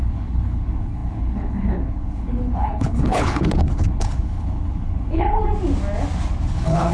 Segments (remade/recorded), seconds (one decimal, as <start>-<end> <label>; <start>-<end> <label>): 0.0-5.4 remade; 5.4-6.5 recorded; 6.5-6.9 remade